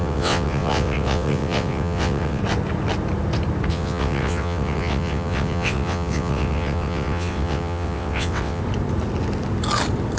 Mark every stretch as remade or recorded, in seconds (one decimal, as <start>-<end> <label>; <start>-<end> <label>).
0.0-2.4 remade; 2.4-3.7 recorded; 3.7-8.6 remade; 8.6-10.2 recorded